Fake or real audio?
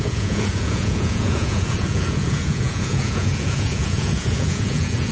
fake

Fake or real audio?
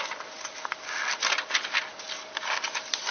real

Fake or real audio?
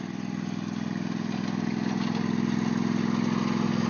real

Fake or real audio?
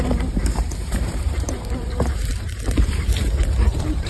fake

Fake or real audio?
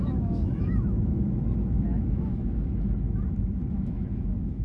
fake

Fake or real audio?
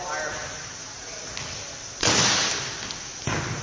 real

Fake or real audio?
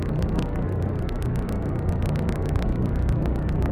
fake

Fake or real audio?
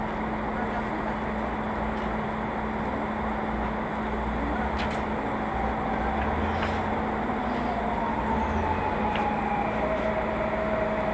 real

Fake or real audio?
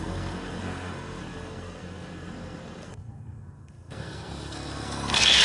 fake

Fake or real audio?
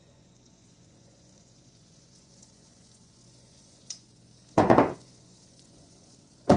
fake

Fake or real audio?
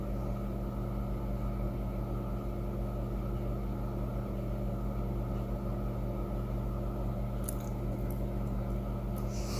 real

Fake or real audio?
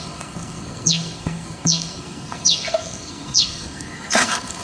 fake